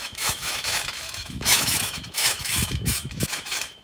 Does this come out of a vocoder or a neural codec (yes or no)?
yes